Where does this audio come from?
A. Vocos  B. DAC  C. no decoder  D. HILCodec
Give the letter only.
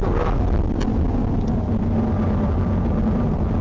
C